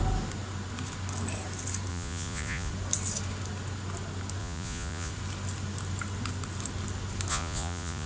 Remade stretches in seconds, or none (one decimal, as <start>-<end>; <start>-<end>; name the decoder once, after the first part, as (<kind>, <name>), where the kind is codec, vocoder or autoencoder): 1.9-2.7 (vocoder, Vocos); 4.4-5.1; 7.3-8.1